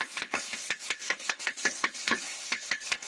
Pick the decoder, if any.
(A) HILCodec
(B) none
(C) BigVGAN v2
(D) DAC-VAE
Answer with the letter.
A